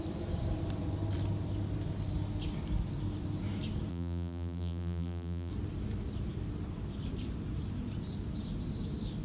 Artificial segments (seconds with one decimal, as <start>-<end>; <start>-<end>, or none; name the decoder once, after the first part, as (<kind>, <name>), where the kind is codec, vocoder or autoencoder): 3.9-5.5 (vocoder, BigVGAN v2)